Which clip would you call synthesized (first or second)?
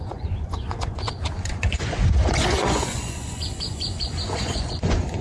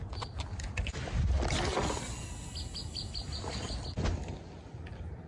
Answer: first